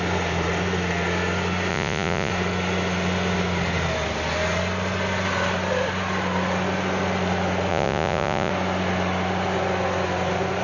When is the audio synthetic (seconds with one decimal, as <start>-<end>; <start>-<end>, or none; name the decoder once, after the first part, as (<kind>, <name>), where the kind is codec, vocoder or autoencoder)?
1.7-2.3 (vocoder, Vocos); 7.7-8.5